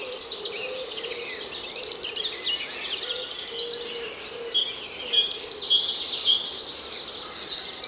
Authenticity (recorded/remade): recorded